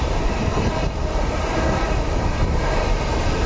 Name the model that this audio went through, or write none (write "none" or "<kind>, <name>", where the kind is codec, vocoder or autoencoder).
none